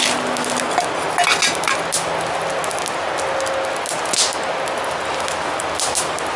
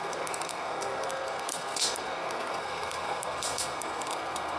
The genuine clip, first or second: first